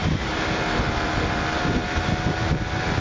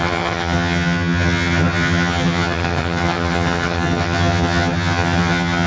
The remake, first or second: second